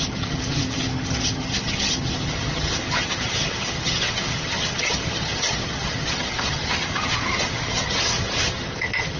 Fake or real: fake